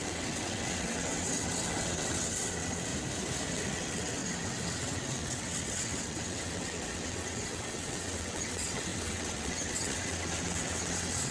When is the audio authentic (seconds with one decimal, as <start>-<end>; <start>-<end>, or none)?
2.9-3.5